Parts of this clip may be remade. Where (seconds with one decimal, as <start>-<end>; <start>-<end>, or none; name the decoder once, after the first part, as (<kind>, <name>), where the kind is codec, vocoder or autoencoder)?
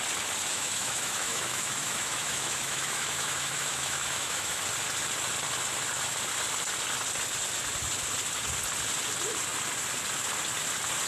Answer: 0.5-4.6 (autoencoder, DAC-VAE)